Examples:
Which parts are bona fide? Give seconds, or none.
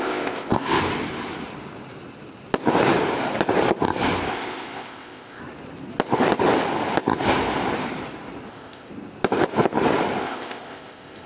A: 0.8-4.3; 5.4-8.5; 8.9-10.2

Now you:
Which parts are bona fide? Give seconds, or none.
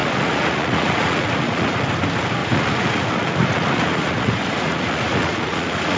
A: 1.8-2.4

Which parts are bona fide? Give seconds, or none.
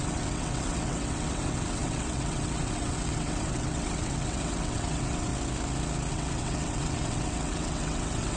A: 5.3-6.1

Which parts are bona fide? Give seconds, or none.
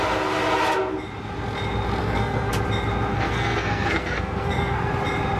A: 0.0-2.0; 2.5-3.1; 4.9-5.4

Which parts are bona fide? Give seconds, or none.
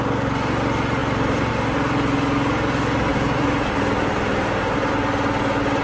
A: 0.0-1.0; 1.5-3.1; 4.9-5.8